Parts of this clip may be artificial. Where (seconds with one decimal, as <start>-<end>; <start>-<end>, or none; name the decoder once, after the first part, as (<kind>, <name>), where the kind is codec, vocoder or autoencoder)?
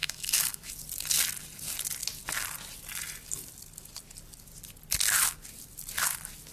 0.0-0.7 (autoencoder, DAC-VAE)